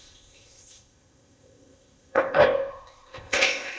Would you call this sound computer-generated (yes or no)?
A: yes